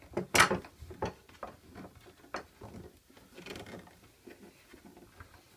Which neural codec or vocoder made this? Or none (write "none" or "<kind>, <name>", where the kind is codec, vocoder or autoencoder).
none